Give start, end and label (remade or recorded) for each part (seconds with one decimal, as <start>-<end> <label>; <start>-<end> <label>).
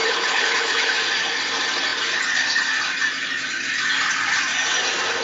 0.0-0.9 remade; 0.9-5.2 recorded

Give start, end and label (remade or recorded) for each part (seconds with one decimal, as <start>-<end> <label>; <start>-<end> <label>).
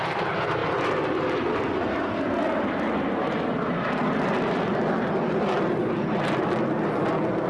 0.0-7.5 recorded